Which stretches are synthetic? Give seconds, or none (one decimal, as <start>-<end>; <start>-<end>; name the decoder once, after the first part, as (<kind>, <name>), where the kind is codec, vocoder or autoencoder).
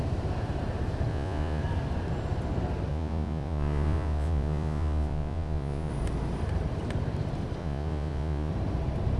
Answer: 1.1-1.6 (vocoder, Vocos); 2.9-5.9; 7.6-8.5